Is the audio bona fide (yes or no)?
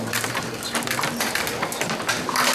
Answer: yes